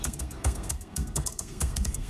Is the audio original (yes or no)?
no